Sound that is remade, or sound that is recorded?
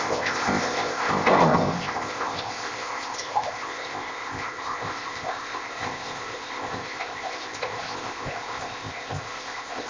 remade